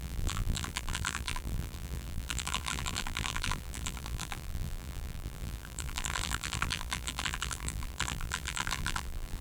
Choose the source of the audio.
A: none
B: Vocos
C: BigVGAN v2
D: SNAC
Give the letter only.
C